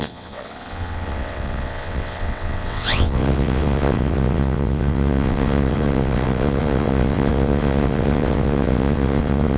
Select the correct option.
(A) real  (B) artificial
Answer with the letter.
B